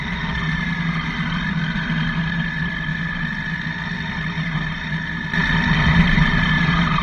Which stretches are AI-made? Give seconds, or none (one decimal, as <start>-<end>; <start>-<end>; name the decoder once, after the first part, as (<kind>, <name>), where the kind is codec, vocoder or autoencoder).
none